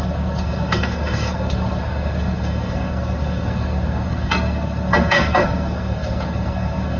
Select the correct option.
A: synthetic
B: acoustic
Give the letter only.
A